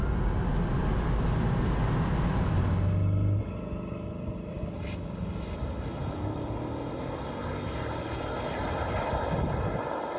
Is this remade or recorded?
recorded